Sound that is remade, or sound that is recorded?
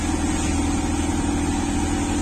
recorded